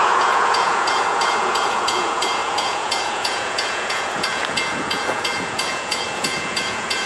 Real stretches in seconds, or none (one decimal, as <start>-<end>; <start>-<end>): none